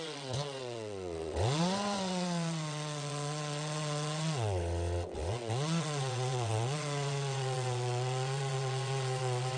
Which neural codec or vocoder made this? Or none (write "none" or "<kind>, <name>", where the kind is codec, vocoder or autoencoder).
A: vocoder, WaveNeXt